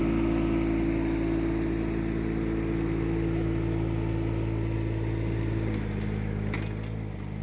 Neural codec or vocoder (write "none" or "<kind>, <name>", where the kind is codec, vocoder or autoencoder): none